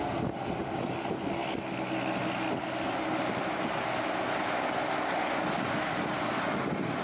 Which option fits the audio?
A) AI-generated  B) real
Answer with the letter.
B